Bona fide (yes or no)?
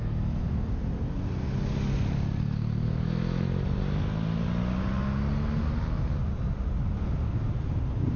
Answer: yes